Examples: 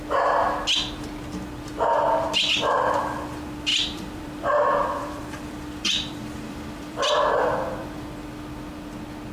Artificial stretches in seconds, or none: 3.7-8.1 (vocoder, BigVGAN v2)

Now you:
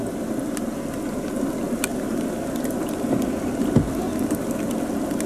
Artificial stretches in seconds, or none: none